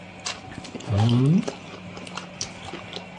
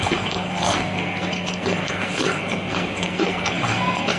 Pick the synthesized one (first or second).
second